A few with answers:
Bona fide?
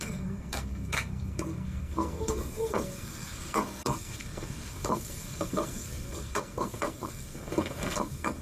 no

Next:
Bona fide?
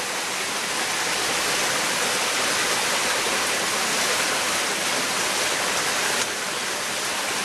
yes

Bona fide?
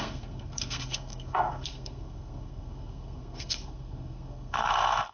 no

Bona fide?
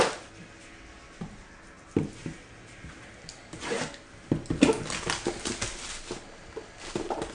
yes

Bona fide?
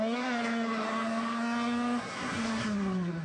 no